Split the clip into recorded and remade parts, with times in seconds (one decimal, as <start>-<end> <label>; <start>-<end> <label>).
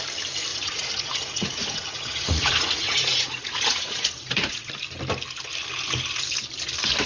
0.0-0.5 recorded; 0.5-4.7 remade; 4.7-7.1 recorded